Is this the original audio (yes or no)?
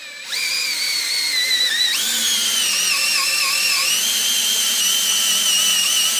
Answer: yes